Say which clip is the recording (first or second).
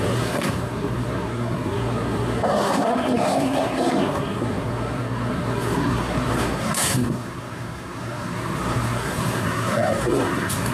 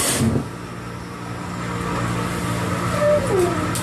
second